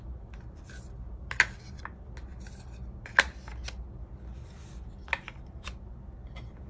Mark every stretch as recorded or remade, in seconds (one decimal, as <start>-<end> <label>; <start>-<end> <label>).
0.0-6.7 recorded